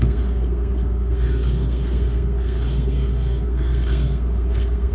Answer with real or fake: fake